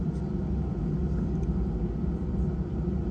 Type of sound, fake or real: real